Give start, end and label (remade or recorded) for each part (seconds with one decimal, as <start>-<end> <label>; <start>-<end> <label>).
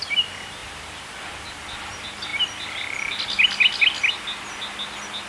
0.0-5.3 recorded